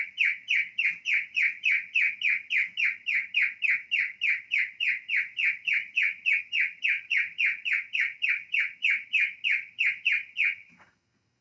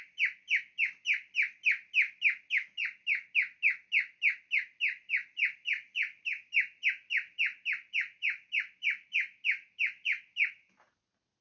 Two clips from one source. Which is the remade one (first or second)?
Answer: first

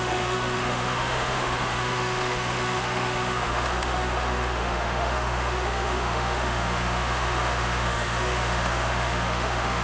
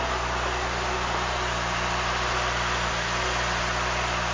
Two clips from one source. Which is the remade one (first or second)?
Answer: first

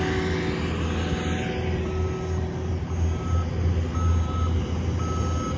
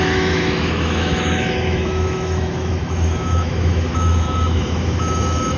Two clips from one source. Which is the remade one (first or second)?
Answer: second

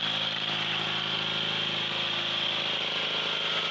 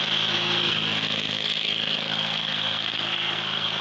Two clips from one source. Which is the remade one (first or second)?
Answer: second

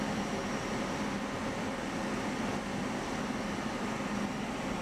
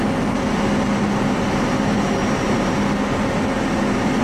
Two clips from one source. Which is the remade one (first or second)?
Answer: first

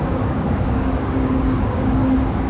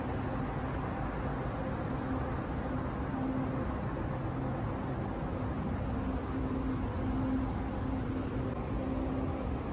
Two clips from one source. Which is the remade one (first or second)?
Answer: first